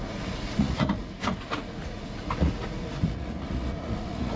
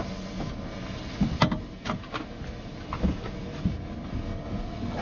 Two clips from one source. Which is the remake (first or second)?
first